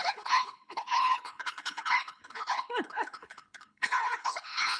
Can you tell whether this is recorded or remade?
remade